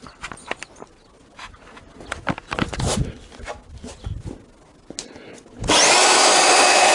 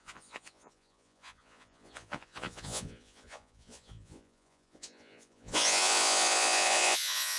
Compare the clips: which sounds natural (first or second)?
first